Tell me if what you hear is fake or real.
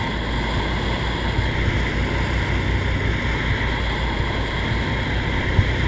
real